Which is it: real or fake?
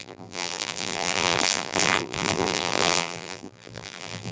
fake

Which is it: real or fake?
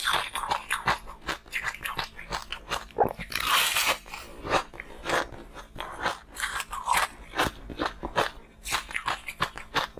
real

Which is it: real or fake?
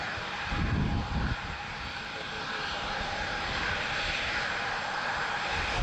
real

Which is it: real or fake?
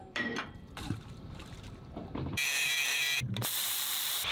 fake